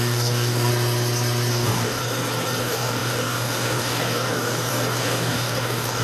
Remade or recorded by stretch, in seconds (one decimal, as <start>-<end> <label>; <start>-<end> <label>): 0.0-0.7 remade; 0.7-1.5 recorded; 1.5-2.0 remade; 2.0-2.6 recorded; 2.6-6.0 remade